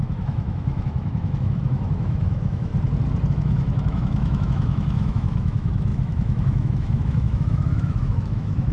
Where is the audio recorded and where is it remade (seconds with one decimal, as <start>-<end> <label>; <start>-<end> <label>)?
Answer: 0.0-2.7 remade; 2.7-3.3 recorded; 3.3-8.7 remade